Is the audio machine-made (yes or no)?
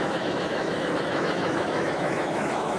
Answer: yes